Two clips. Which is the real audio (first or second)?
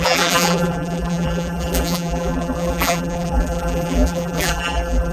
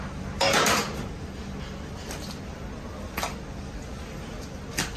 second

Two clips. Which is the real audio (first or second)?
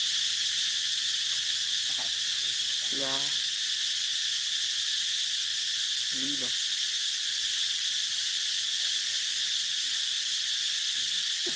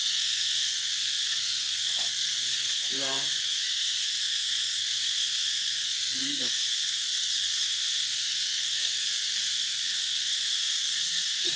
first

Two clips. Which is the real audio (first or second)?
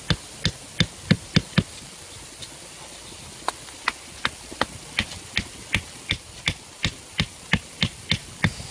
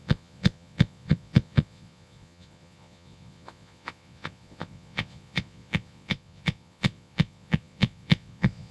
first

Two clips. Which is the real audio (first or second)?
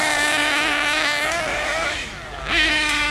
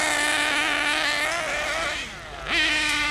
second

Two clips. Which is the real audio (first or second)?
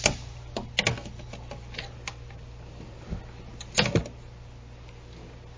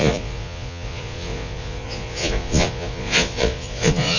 first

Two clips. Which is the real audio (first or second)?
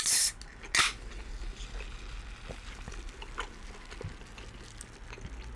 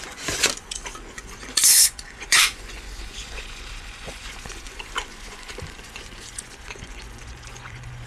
first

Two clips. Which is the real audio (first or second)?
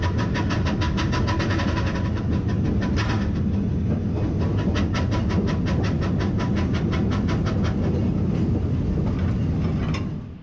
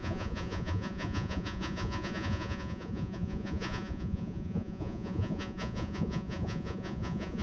first